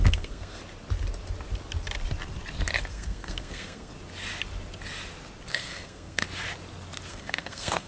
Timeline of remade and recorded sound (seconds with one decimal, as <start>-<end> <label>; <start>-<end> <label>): 0.0-0.6 remade; 0.6-2.9 recorded; 2.9-3.9 remade; 3.9-5.5 recorded; 5.5-6.2 remade; 6.2-7.1 recorded; 7.1-7.9 remade